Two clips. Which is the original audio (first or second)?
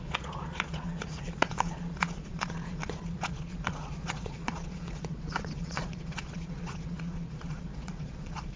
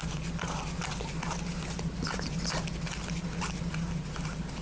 second